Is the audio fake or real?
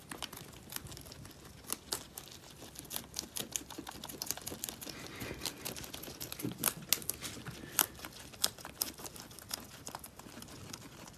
real